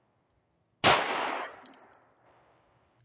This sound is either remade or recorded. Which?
recorded